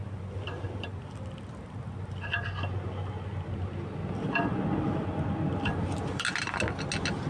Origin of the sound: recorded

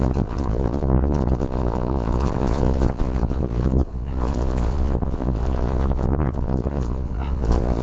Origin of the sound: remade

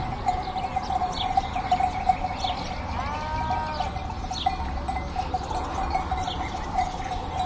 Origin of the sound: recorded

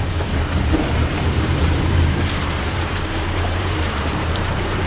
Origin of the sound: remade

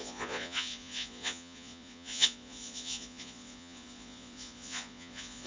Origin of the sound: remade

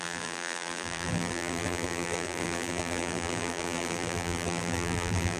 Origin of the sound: remade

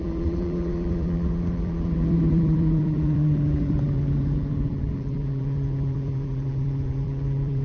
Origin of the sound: remade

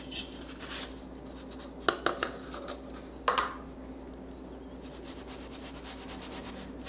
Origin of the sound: recorded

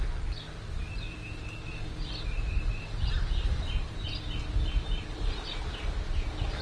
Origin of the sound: recorded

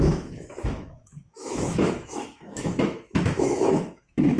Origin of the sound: remade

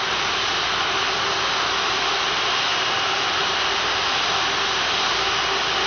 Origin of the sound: recorded